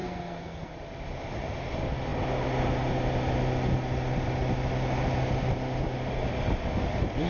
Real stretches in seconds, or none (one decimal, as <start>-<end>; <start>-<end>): 0.7-7.3